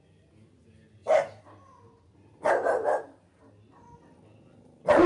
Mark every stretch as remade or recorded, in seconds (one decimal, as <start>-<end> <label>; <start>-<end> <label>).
0.0-5.1 recorded